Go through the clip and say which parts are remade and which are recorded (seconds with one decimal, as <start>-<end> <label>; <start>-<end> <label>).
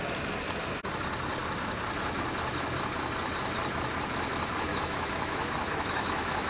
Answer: 0.0-4.7 recorded; 4.7-6.5 remade